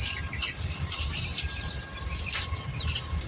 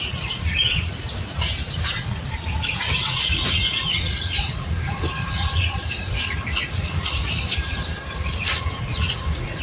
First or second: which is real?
first